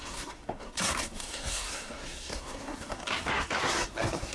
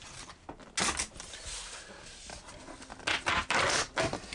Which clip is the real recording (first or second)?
second